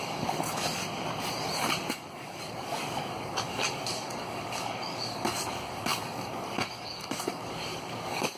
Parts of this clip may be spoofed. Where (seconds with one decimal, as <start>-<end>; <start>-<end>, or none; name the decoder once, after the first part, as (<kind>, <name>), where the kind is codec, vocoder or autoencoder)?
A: 0.0-0.8 (codec, DAC); 1.9-8.4